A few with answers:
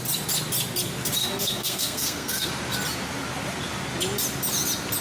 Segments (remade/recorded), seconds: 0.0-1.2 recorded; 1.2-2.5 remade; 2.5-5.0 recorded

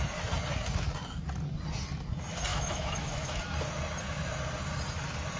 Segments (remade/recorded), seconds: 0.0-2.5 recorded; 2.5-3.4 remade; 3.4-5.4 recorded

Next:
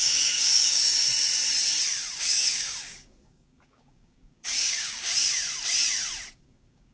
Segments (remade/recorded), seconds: 0.0-1.0 remade; 1.0-2.2 recorded; 2.2-5.1 remade; 5.1-6.3 recorded; 6.3-6.9 remade

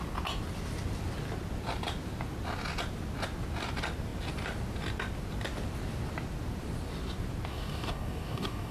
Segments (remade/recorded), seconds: 0.0-7.5 recorded; 7.5-8.7 remade

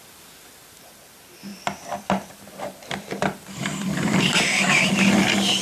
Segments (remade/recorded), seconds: 0.0-1.5 recorded; 1.5-4.9 remade; 4.9-5.6 recorded

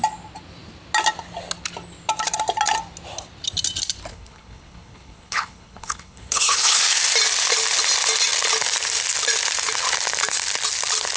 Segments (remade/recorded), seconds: 0.0-4.1 recorded; 4.1-6.8 remade; 6.8-11.2 recorded